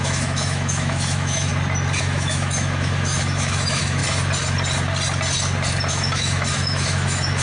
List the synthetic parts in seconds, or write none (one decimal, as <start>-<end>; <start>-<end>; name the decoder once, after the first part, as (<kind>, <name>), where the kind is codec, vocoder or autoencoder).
0.0-1.5 (autoencoder, DAC-VAE); 2.0-4.0; 5.9-7.4